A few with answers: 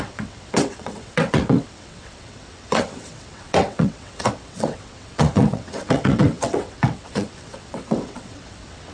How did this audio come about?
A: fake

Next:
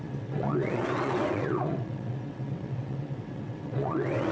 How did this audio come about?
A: fake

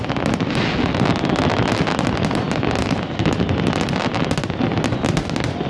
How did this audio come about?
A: real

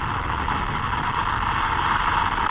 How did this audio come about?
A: real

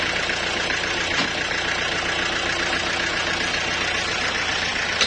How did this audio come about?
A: real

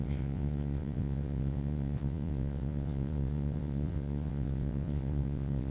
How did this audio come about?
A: fake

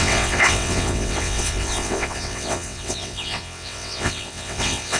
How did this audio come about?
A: fake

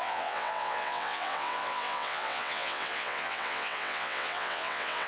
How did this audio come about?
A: fake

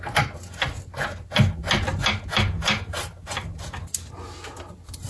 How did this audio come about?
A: real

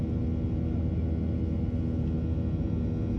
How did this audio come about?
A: real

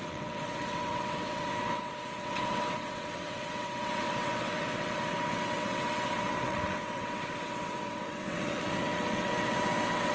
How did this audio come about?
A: fake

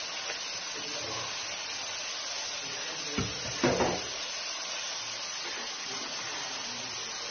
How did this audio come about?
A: real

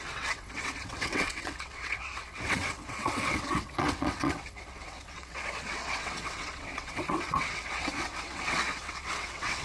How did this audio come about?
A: fake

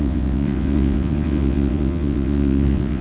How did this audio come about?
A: fake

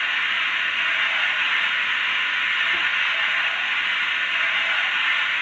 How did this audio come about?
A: real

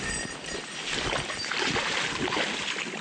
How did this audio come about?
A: real